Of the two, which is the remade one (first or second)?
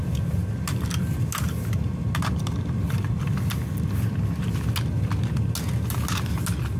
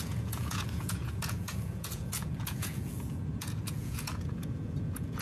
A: second